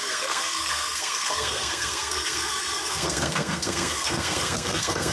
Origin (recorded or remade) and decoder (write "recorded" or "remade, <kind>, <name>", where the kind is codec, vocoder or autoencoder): remade, codec, SNAC